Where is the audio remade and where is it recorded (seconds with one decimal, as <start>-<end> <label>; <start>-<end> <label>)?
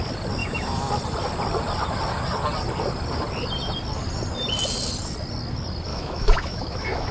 0.0-0.4 recorded; 0.4-0.9 remade; 0.9-5.9 recorded; 5.9-7.1 remade